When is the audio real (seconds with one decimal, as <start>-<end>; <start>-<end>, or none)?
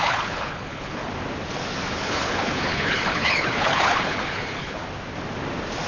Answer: 1.0-1.9; 4.8-5.9